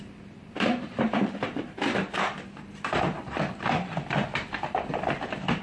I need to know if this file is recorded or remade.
remade